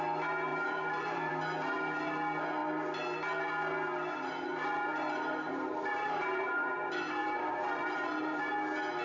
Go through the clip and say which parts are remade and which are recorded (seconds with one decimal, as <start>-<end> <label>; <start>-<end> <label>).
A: 0.0-0.5 recorded; 0.5-1.3 remade; 1.3-4.9 recorded; 4.9-6.7 remade; 6.7-7.2 recorded; 7.2-8.4 remade; 8.4-9.0 recorded